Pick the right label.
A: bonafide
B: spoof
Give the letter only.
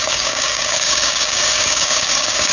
B